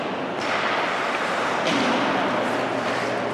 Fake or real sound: real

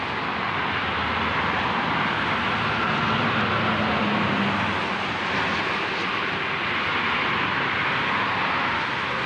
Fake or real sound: real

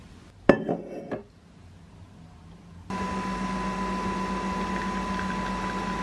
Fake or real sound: real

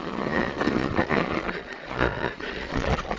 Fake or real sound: fake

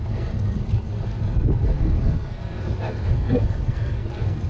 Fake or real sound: fake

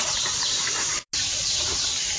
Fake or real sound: real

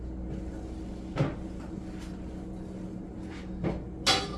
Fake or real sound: real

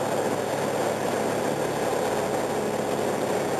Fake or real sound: real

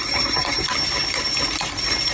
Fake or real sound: real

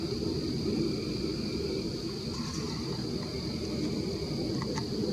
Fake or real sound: real